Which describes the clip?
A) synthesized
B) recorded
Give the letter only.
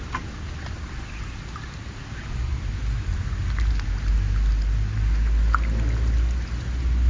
B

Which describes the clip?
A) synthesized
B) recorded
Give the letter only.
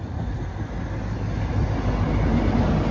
B